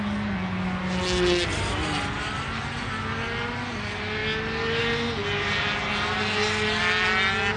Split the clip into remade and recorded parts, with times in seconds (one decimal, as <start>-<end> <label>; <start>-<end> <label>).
0.0-7.6 recorded